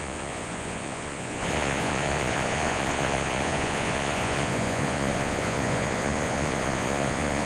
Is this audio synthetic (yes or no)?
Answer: yes